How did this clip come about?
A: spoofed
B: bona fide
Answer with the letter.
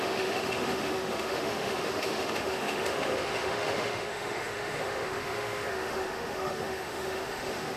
A